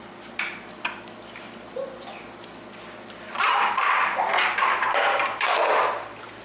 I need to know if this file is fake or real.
real